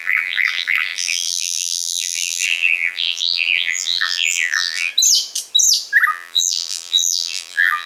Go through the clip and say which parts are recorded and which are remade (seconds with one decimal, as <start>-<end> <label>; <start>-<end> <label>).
0.0-4.9 remade; 4.9-6.1 recorded; 6.1-7.9 remade